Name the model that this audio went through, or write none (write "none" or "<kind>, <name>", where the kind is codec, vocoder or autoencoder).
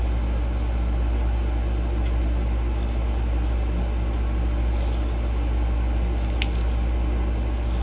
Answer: none